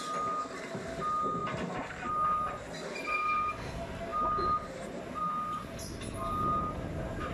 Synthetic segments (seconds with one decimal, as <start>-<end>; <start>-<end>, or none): 1.4-1.9